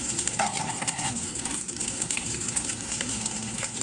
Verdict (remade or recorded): remade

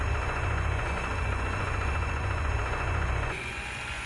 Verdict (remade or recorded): remade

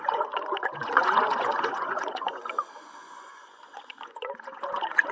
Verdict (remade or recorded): remade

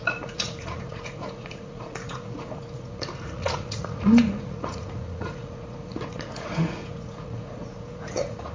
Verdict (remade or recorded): remade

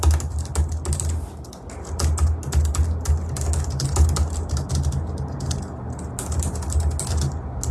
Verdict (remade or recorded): recorded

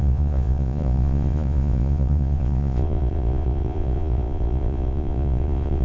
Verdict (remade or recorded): remade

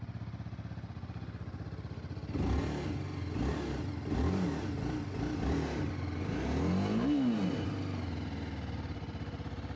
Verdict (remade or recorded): recorded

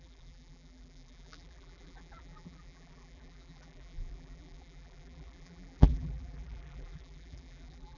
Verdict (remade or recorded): remade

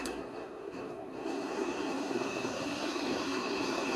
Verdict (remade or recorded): remade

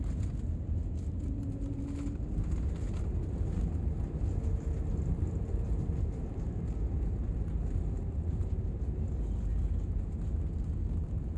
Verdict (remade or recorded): recorded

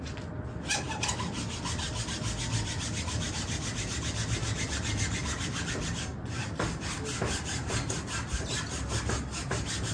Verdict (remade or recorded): recorded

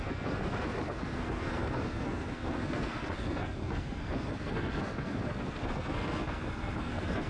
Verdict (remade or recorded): remade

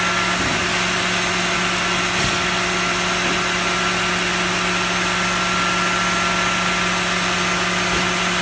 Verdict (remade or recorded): recorded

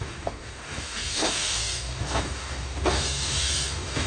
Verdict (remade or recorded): remade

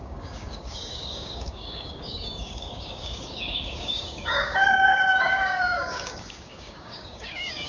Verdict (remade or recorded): remade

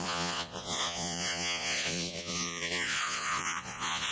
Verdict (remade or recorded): remade